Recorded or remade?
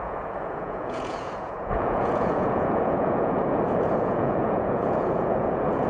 remade